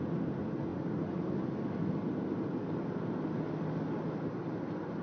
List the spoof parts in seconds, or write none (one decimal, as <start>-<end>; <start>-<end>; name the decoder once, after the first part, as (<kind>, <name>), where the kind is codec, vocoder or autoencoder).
none